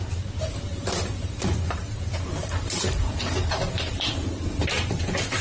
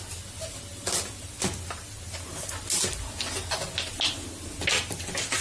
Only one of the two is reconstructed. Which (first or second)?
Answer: first